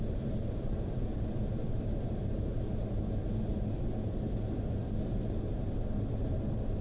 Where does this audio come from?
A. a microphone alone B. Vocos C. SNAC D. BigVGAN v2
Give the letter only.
A